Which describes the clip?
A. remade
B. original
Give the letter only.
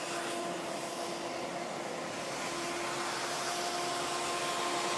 B